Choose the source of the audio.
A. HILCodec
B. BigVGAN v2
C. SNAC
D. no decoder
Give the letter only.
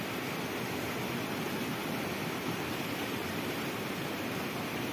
D